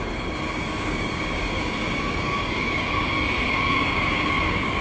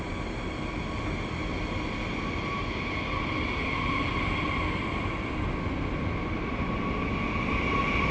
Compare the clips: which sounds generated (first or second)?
first